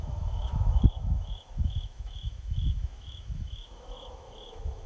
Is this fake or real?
fake